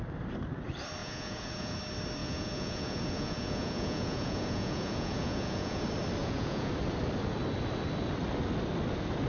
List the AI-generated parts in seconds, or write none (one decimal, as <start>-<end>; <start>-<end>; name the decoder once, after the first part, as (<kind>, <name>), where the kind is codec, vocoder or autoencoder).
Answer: 1.0-1.8 (vocoder, Vocos); 2.2-5.8; 6.2-6.7